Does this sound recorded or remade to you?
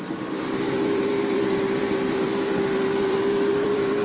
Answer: remade